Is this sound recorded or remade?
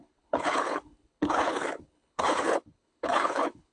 remade